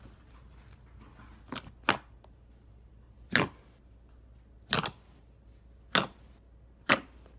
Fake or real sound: real